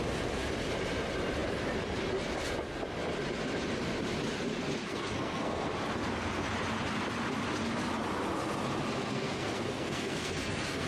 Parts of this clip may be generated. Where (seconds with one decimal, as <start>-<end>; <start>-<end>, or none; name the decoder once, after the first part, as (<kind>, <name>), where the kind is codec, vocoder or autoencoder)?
4.8-5.7 (codec, SNAC); 9.1-10.9